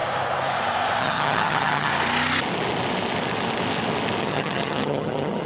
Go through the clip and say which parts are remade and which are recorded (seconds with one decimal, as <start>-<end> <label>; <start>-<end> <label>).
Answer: 0.0-1.0 recorded; 1.0-1.9 remade; 1.9-4.2 recorded; 4.2-5.5 remade